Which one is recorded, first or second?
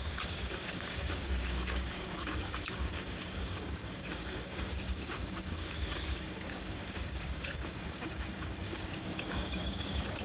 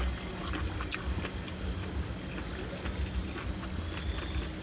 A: second